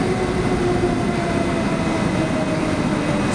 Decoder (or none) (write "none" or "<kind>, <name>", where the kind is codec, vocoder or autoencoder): none